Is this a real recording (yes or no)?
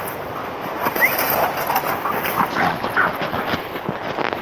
yes